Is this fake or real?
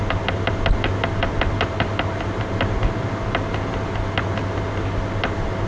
real